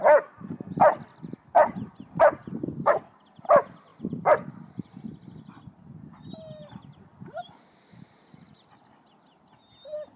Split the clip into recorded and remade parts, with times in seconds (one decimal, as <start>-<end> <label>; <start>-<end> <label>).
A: 0.0-2.4 recorded; 2.4-3.0 remade; 3.0-3.9 recorded; 3.9-5.6 remade; 5.6-6.6 recorded; 6.6-7.4 remade; 7.4-10.2 recorded